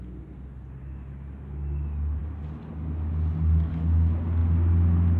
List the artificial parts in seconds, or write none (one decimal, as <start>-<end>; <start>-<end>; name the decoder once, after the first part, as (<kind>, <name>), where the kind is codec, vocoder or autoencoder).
none